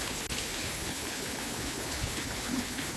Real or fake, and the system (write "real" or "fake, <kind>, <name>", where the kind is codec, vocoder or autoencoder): fake, codec, HILCodec